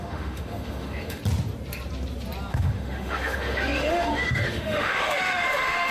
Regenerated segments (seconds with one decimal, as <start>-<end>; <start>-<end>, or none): 0.0-1.2; 2.5-5.9